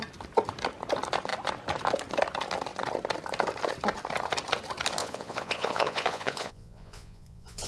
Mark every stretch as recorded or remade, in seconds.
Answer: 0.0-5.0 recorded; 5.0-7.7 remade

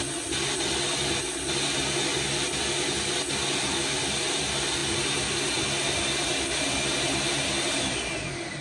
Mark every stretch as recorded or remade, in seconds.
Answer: 0.0-8.6 recorded

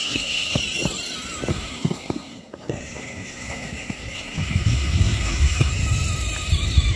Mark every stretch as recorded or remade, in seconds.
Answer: 0.0-0.6 remade; 0.6-1.5 recorded; 1.5-5.7 remade; 5.7-7.0 recorded

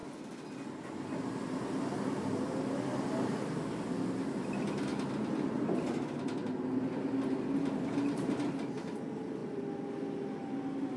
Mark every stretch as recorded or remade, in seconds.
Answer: 0.0-9.4 recorded; 9.4-9.9 remade; 9.9-11.0 recorded

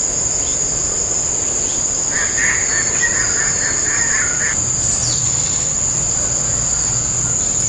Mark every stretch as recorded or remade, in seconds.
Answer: 0.0-7.7 recorded

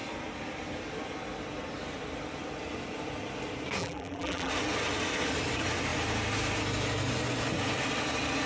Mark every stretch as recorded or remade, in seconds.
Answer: 0.0-3.8 recorded; 3.8-4.5 remade; 4.5-8.5 recorded

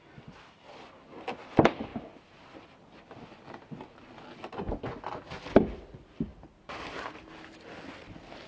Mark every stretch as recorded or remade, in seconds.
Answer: 0.0-8.5 recorded